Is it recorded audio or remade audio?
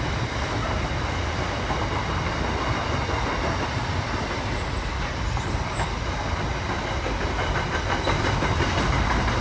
recorded